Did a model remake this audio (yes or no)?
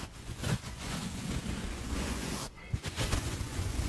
yes